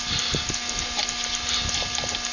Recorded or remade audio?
recorded